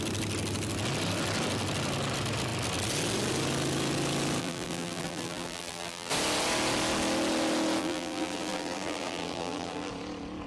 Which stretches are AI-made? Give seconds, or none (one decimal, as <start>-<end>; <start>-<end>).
4.4-6.1; 7.8-9.9